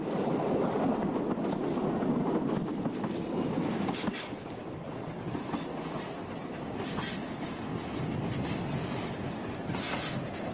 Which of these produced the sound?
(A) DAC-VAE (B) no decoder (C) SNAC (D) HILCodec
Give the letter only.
B